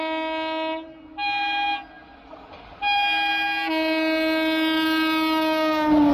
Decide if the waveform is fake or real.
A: real